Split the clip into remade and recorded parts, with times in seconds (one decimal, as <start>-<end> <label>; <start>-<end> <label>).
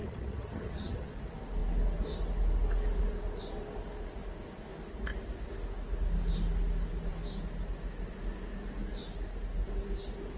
0.0-1.1 remade; 1.1-10.4 recorded